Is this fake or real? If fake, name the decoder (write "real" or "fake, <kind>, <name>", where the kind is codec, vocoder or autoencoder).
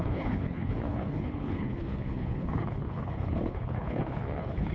fake, codec, HILCodec